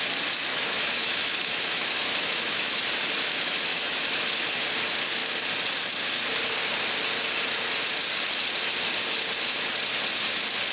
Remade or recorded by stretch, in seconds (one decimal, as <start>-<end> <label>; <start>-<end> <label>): 0.0-0.5 recorded; 0.5-2.8 remade; 2.8-3.7 recorded; 3.7-4.2 remade; 4.2-10.7 recorded